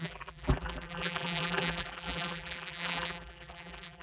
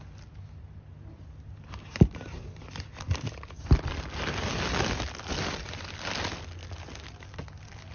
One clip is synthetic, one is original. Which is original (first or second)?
second